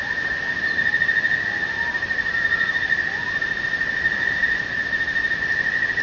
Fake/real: real